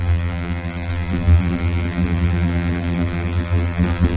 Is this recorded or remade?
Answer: remade